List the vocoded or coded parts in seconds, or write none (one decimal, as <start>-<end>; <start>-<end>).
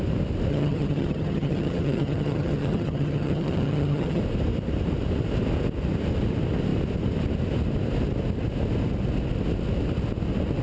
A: 0.5-4.2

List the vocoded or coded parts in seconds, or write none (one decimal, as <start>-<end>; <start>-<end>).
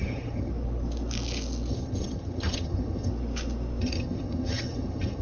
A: 0.0-0.5; 1.7-3.1; 3.8-5.2